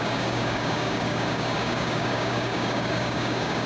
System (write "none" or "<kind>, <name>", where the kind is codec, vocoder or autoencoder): codec, DAC